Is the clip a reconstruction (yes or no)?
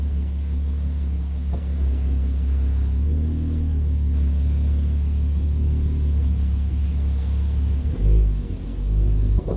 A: yes